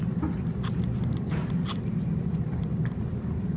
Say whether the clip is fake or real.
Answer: real